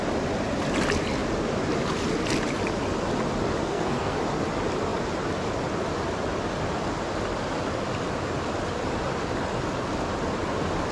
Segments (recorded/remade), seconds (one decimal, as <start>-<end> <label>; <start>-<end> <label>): 0.0-3.6 recorded; 3.6-4.2 remade; 4.2-10.9 recorded